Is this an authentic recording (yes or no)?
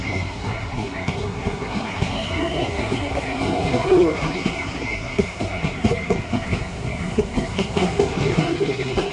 no